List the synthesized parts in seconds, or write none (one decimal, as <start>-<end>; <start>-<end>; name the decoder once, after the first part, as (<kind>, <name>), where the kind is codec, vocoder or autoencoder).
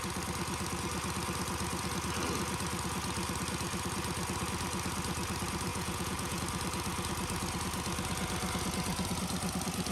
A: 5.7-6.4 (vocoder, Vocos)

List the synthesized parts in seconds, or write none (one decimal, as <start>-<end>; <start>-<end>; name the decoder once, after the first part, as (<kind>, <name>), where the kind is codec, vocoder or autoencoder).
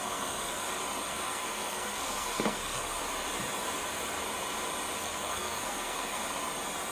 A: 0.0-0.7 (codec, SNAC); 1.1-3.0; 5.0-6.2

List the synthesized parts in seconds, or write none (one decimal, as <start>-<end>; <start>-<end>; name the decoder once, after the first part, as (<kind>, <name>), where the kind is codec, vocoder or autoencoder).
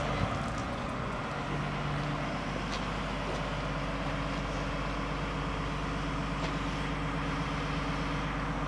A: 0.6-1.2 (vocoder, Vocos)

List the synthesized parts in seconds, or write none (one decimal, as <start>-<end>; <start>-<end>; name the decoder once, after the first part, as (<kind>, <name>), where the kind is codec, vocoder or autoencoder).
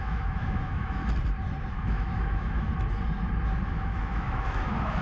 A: 0.0-1.0 (autoencoder, DAC-VAE); 1.7-2.7; 3.7-5.0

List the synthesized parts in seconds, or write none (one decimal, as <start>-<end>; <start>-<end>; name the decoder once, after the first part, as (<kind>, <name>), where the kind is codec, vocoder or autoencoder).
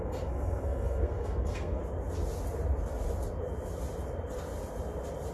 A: 0.0-1.8 (codec, SNAC)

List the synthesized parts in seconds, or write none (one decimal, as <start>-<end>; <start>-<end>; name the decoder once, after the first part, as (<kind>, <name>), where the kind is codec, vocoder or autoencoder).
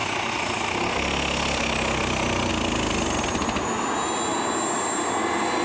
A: none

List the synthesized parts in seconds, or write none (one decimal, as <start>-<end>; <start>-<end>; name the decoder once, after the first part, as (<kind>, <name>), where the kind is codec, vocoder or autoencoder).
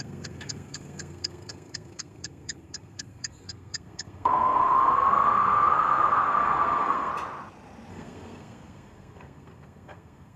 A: 0.0-7.1 (codec, SNAC); 7.9-10.4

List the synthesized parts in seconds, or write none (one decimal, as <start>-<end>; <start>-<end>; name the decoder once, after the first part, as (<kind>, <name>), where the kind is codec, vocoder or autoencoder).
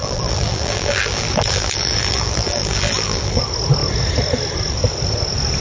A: 0.0-3.4 (vocoder, BigVGAN v2)